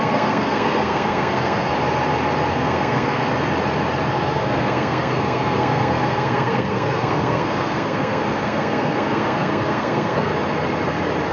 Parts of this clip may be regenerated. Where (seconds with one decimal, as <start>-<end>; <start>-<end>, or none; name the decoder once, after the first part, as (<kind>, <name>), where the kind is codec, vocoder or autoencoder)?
0.0-1.7 (codec, SNAC); 2.5-3.3; 4.1-10.3